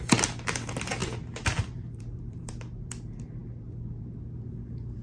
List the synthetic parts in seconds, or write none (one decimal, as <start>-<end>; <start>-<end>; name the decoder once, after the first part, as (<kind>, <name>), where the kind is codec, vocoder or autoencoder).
1.0-2.9 (vocoder, BigVGAN v2)